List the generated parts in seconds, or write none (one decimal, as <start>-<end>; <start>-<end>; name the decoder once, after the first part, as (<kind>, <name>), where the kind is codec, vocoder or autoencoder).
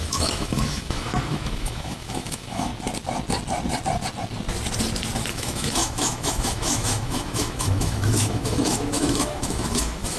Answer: 0.0-2.7 (autoencoder, DAC-VAE); 5.3-10.2